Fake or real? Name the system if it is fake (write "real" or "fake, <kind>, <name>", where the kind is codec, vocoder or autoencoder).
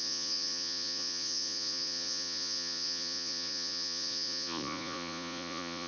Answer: fake, vocoder, Vocos